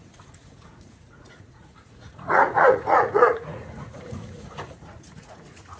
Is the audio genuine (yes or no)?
no